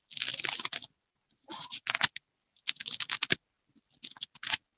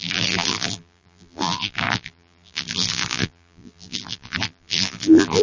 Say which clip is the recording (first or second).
first